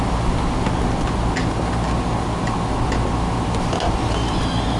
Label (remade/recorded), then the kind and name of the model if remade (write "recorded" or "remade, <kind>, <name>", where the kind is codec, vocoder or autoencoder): recorded